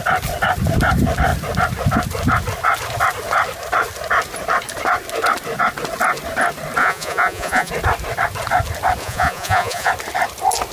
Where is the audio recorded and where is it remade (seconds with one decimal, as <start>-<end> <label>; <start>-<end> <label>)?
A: 0.0-6.8 recorded; 6.8-7.7 remade; 7.7-9.0 recorded; 9.0-9.9 remade; 9.9-10.7 recorded